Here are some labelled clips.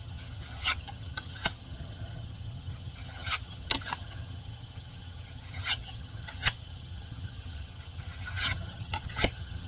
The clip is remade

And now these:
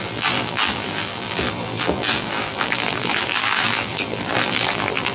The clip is remade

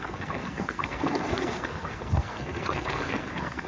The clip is remade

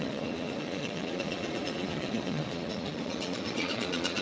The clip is remade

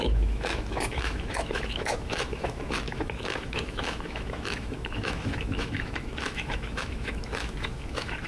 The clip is remade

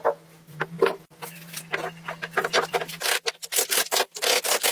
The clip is recorded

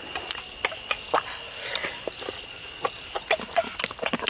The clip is recorded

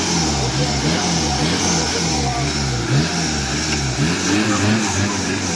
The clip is recorded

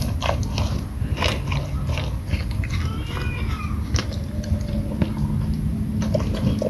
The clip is recorded